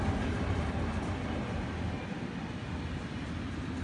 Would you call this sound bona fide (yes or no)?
yes